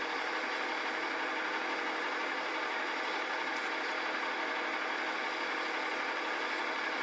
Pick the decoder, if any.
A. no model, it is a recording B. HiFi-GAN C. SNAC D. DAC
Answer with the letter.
A